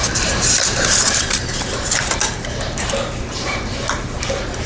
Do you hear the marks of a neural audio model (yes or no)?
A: yes